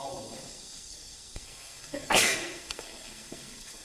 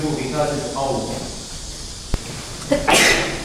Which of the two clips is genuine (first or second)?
second